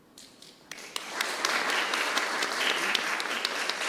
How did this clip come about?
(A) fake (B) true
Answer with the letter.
A